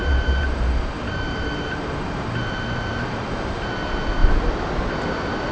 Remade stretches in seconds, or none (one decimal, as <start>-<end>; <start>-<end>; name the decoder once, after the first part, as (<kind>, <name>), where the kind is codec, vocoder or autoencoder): 0.0-3.3 (vocoder, BigVGAN v2)